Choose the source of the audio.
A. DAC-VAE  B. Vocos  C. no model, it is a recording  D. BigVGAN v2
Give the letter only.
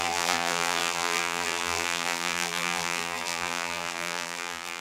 D